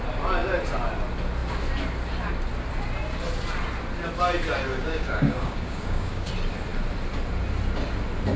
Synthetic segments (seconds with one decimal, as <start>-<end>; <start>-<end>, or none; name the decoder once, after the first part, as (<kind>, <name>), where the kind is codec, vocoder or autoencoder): 4.7-6.3 (codec, DAC)